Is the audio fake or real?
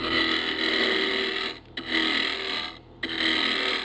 real